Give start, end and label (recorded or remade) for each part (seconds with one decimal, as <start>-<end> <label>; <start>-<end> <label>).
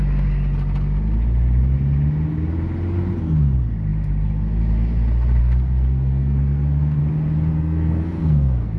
0.0-5.4 recorded; 5.4-7.0 remade; 7.0-7.5 recorded; 7.5-8.8 remade